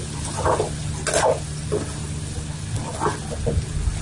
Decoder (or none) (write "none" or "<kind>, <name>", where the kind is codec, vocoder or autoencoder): none